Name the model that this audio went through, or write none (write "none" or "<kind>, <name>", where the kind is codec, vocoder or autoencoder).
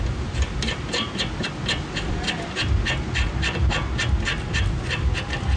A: none